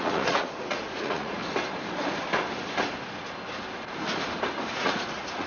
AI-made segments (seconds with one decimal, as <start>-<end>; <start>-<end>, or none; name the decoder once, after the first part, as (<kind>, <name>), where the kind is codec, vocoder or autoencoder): 0.0-1.4 (vocoder, Vocos); 4.7-5.5